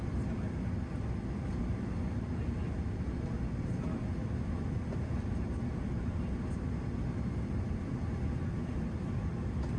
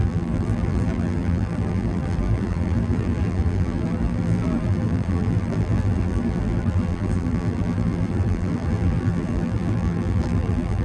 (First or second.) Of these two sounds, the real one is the first